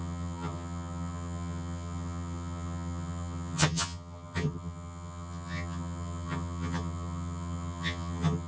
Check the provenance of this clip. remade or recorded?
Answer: remade